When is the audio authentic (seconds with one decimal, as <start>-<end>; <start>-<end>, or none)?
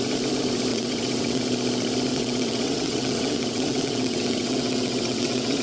0.0-0.7; 1.4-2.1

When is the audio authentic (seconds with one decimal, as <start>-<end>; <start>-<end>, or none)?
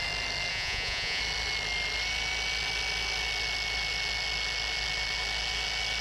0.0-0.5; 1.2-6.0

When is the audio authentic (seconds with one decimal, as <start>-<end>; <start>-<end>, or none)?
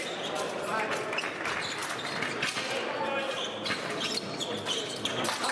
0.0-5.5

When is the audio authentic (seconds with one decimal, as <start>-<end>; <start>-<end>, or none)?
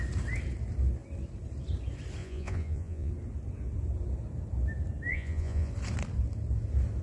0.0-2.2; 3.1-5.1; 5.7-7.0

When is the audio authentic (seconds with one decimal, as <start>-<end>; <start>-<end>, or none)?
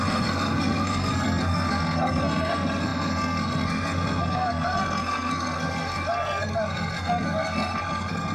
none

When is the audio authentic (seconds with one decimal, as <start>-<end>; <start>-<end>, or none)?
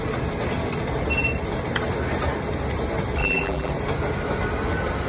0.0-3.2; 3.7-5.1